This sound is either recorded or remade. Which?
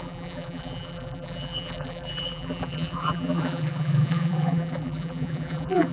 remade